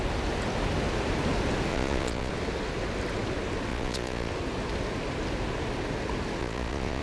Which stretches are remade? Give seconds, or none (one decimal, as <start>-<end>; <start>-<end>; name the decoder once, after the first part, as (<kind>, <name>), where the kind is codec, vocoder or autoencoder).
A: 1.7-2.3 (vocoder, Vocos); 3.7-4.3; 6.4-7.0